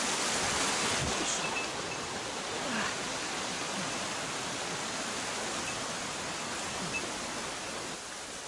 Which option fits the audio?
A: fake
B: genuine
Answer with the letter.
B